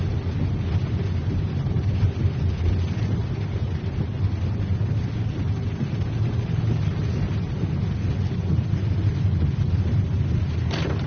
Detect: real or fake real